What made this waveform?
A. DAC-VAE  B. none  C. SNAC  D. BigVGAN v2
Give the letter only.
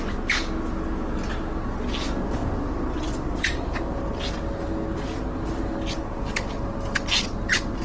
B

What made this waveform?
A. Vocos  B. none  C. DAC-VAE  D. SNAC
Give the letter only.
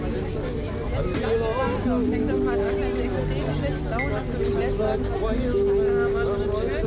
B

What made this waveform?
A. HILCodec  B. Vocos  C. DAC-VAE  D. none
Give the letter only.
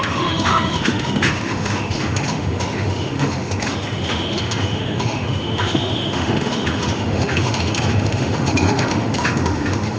C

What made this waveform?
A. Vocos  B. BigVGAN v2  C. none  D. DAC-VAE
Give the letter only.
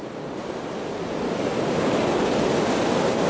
C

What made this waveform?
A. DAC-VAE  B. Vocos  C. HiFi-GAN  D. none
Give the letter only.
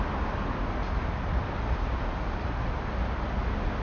D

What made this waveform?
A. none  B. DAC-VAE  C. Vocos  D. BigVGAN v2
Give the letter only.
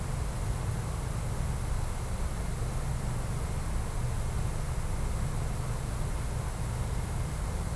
A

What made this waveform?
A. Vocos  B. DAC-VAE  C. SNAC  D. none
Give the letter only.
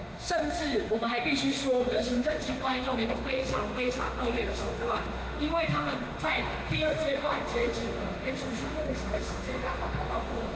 B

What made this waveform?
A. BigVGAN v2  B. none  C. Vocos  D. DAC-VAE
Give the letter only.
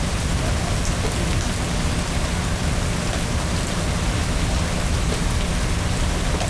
B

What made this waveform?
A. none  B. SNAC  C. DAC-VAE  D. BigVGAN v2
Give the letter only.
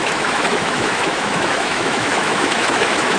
C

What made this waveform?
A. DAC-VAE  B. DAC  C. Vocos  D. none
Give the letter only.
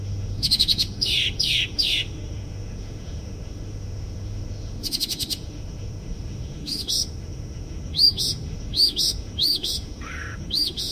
A